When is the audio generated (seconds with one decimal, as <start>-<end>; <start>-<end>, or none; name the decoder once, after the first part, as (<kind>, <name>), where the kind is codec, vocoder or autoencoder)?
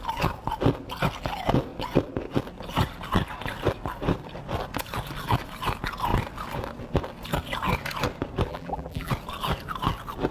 8.5-9.1 (vocoder, BigVGAN v2)